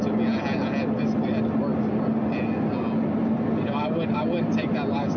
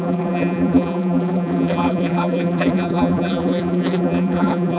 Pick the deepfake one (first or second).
second